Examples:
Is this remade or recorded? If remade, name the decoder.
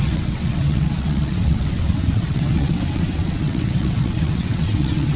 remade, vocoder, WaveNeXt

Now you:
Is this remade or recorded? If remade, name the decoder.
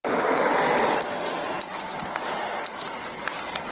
recorded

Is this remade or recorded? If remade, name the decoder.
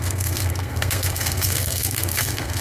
remade, codec, SNAC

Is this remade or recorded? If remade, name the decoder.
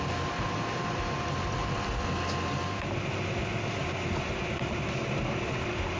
recorded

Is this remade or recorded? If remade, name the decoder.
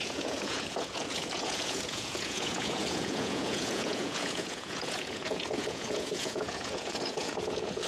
remade, vocoder, Vocos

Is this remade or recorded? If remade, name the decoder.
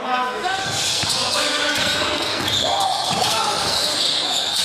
remade, codec, SNAC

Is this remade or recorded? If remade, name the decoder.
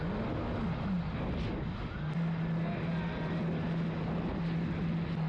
recorded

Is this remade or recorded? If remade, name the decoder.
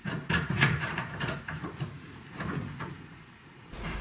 remade, vocoder, Vocos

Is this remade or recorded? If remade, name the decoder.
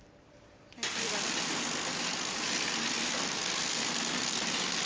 recorded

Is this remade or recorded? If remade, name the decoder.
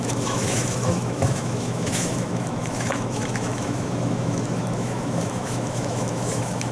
remade, autoencoder, DAC-VAE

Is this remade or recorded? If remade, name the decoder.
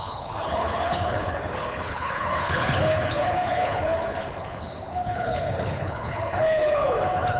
remade, codec, HILCodec